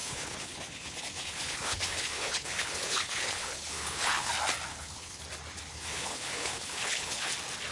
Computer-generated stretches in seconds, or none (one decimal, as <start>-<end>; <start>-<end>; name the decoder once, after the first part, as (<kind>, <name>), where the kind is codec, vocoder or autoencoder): 0.0-4.3 (codec, HILCodec); 4.7-5.2; 5.7-7.3